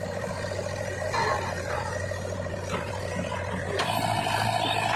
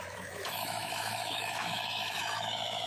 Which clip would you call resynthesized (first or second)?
second